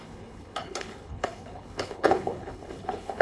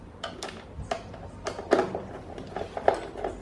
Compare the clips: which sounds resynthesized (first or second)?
first